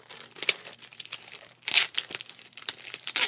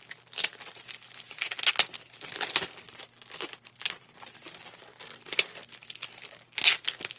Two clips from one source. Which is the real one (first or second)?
second